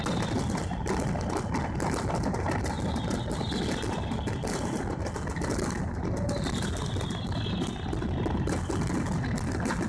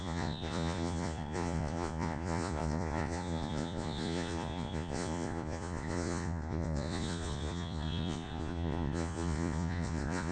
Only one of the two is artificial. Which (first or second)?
second